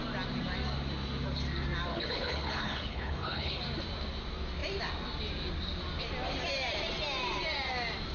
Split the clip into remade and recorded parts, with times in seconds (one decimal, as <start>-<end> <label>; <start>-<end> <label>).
0.0-1.9 recorded; 1.9-3.6 remade; 3.6-8.1 recorded